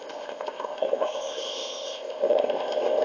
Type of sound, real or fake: fake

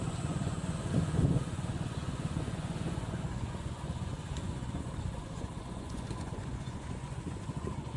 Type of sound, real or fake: fake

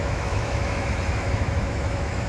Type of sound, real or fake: fake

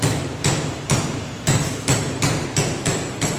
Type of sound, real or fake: real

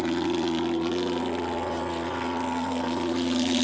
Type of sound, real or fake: real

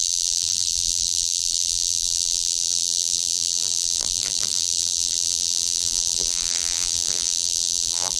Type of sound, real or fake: fake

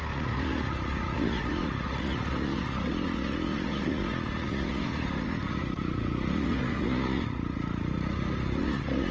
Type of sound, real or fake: fake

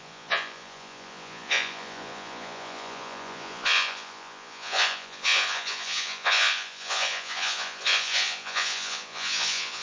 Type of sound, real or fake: fake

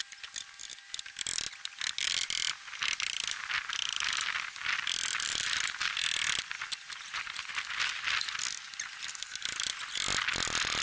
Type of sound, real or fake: real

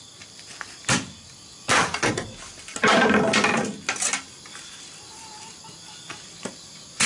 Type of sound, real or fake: real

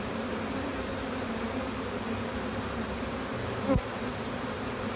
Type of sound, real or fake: real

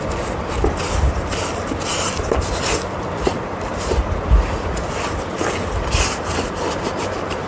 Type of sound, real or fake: real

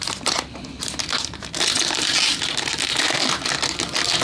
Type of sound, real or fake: real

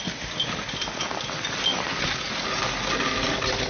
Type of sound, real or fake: real